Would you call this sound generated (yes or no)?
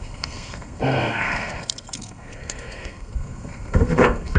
yes